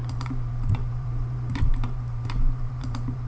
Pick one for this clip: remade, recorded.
remade